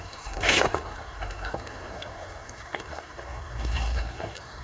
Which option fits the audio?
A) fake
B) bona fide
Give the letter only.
A